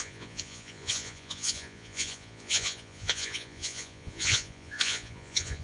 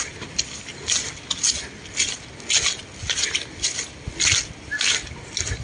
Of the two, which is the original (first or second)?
second